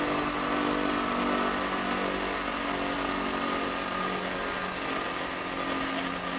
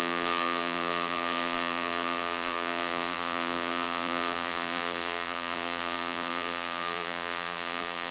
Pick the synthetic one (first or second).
second